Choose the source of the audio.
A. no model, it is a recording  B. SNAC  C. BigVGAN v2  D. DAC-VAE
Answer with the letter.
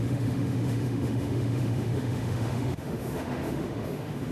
D